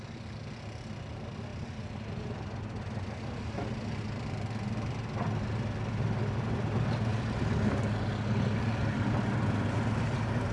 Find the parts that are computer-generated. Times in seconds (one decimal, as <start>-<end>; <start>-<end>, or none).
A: none